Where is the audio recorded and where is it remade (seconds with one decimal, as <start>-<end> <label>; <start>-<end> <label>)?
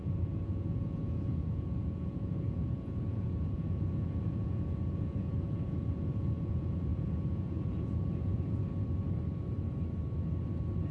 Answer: 0.0-8.7 remade; 8.7-10.9 recorded